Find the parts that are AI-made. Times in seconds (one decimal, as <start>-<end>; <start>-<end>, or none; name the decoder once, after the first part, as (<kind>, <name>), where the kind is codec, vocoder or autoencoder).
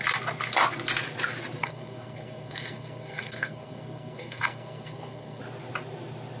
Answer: 1.6-5.4 (codec, SNAC)